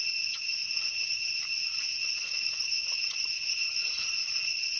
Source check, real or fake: fake